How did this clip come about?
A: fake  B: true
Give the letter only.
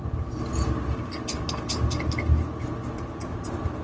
B